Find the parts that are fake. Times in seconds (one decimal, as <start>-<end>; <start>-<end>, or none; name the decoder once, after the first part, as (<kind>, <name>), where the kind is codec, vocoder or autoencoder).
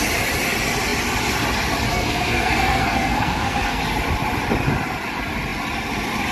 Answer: 1.9-3.8 (codec, SNAC)